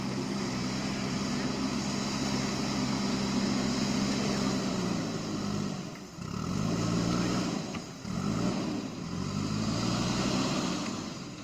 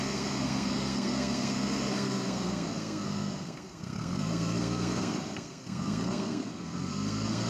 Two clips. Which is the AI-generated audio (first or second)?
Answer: second